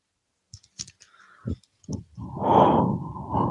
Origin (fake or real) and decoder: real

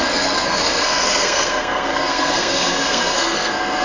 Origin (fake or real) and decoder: fake, codec, SNAC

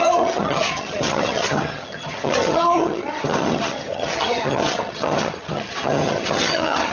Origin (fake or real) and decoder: fake, vocoder, HiFi-GAN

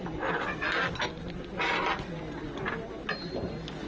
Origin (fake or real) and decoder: real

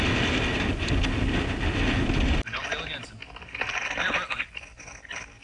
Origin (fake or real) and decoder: real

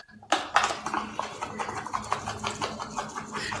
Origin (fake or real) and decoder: real